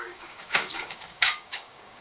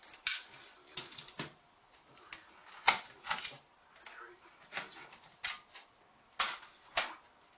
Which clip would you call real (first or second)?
second